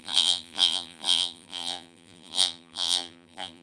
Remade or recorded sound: remade